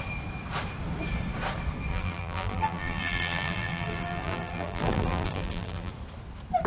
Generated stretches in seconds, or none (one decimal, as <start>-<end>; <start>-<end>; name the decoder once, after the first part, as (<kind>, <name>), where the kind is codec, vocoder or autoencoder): 1.9-5.9 (vocoder, BigVGAN v2)